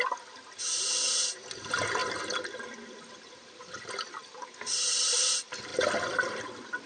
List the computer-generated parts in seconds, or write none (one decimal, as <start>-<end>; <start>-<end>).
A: none